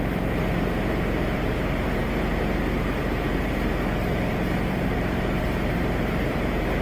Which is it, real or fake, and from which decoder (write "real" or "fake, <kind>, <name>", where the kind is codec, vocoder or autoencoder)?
fake, vocoder, BigVGAN v2